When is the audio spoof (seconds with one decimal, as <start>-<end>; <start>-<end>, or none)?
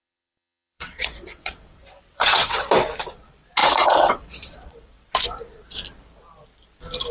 0.0-2.7; 3.6-5.1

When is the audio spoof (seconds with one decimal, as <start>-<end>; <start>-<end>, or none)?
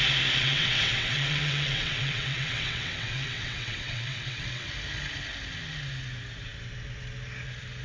0.4-4.7